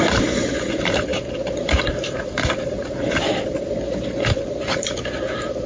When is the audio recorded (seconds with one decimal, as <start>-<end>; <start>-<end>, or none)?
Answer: none

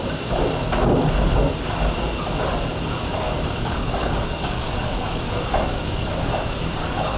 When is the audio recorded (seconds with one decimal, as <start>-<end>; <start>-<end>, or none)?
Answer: 0.0-3.1

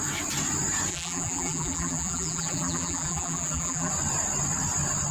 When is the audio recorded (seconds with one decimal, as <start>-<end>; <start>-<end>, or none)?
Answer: 0.0-0.9; 3.9-5.1

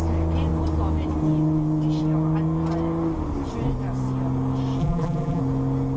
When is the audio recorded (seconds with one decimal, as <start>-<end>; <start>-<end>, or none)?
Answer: 0.0-4.8; 5.4-6.0

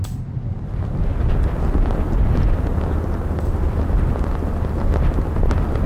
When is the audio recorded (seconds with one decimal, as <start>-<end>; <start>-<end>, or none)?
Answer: 0.0-5.9